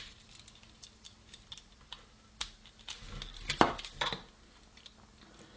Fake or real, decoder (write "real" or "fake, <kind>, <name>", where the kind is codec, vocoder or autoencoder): real